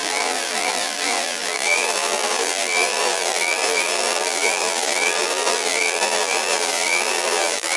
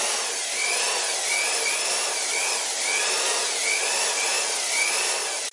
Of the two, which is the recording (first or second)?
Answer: second